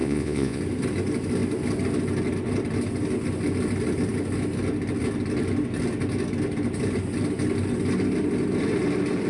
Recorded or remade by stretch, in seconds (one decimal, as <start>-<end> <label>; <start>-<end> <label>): 0.0-0.6 remade; 0.6-9.3 recorded